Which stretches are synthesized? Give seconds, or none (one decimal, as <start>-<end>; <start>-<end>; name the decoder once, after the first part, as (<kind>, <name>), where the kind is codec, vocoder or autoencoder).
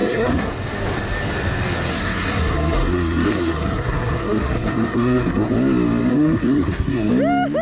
0.0-0.5 (codec, SNAC); 1.9-5.5; 6.1-7.1